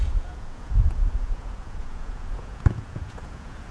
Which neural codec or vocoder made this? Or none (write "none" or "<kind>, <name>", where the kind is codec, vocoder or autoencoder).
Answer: vocoder, Vocos